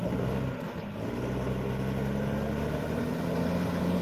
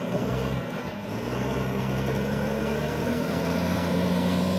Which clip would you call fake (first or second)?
second